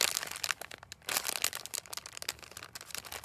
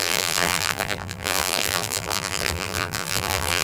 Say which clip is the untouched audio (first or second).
first